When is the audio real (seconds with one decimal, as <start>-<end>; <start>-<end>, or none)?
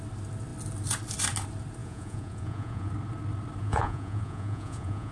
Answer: 0.0-1.8; 2.9-3.6